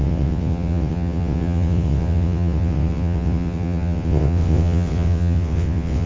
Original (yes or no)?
no